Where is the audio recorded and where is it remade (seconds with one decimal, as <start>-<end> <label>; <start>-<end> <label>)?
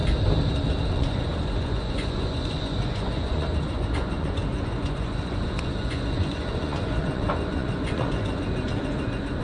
0.0-0.9 recorded; 0.9-9.4 remade